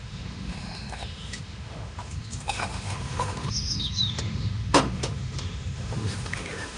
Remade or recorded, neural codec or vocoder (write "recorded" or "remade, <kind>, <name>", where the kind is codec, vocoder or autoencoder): remade, autoencoder, DAC-VAE